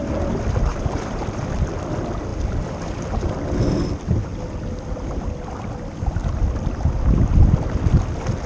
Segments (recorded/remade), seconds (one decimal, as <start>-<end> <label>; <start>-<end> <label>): 0.0-0.7 recorded; 0.7-1.4 remade; 1.4-8.5 recorded